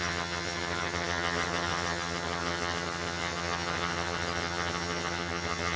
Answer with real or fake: fake